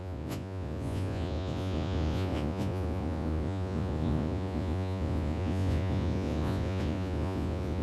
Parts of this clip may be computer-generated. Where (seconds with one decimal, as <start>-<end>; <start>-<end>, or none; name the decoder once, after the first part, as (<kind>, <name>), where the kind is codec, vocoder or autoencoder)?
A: 0.0-7.8 (vocoder, Vocos)